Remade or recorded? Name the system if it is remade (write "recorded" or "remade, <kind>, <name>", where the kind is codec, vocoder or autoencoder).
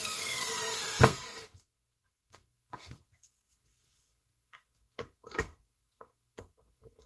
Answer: remade, codec, SNAC